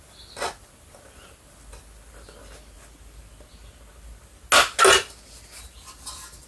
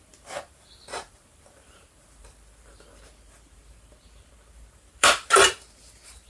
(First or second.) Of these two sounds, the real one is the first